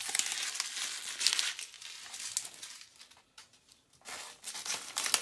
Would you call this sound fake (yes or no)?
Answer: no